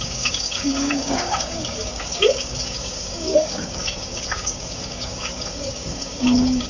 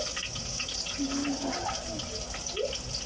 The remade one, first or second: first